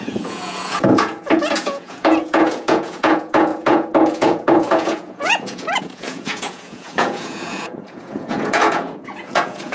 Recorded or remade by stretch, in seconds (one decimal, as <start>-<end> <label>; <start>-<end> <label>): 0.0-9.7 remade